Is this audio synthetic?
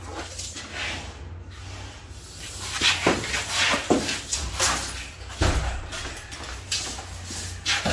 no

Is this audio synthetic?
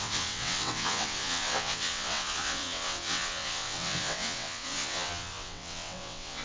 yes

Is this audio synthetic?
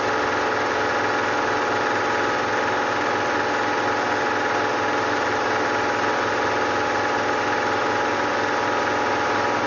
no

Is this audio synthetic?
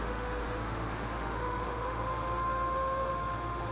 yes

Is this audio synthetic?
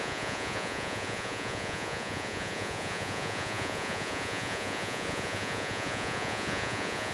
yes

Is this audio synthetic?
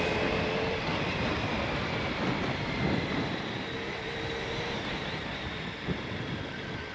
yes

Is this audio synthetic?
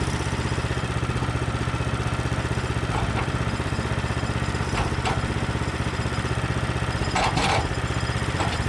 yes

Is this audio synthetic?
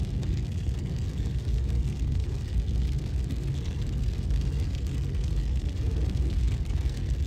yes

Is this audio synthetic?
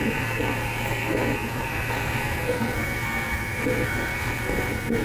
yes